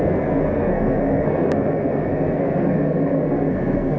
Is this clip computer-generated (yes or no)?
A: yes